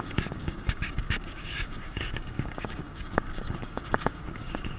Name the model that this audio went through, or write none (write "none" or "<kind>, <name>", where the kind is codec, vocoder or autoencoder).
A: codec, DAC